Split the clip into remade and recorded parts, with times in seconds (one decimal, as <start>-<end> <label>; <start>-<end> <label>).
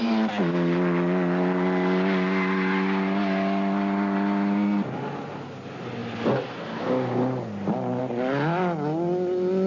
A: 0.0-9.7 recorded